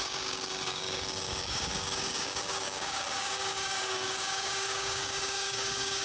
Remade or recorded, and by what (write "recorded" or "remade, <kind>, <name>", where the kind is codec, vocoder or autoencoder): remade, codec, DAC